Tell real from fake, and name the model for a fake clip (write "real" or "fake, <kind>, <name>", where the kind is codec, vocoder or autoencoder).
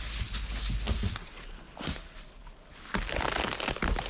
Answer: real